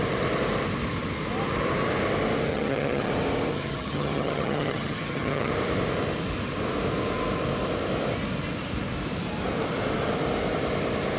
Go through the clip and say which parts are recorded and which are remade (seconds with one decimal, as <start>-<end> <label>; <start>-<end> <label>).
0.0-2.5 recorded; 2.5-3.1 remade; 3.1-3.5 recorded; 3.5-5.5 remade; 5.5-11.2 recorded